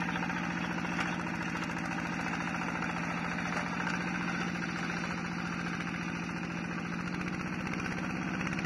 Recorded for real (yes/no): yes